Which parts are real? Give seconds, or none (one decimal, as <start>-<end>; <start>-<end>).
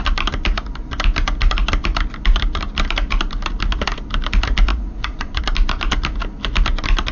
0.0-4.7; 5.4-7.1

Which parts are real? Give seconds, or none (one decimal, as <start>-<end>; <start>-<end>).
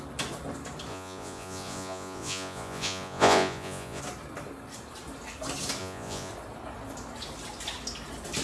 0.0-0.9; 4.0-5.8; 6.3-8.4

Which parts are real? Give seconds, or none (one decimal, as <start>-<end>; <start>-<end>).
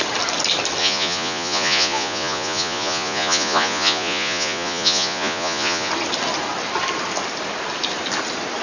0.0-0.8; 5.9-8.6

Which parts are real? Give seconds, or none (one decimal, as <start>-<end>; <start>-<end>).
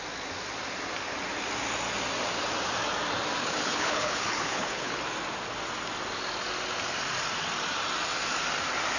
0.0-3.4; 5.0-9.0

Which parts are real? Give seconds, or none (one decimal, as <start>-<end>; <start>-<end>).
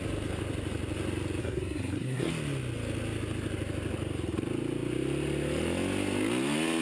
0.0-1.4; 2.3-6.8